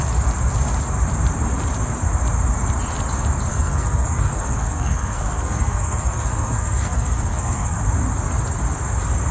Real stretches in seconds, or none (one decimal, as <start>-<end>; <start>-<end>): 0.0-3.5; 7.8-9.3